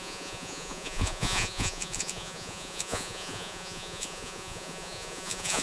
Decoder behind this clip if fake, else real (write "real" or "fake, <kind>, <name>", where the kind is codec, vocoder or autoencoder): fake, vocoder, Vocos